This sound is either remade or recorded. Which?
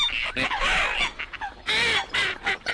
recorded